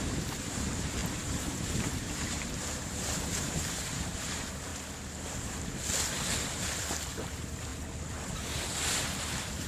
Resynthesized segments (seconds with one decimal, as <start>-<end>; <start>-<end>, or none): 0.0-4.7; 6.5-7.7; 9.2-9.7